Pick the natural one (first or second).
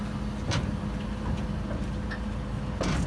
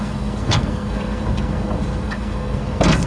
first